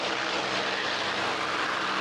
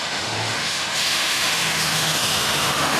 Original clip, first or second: first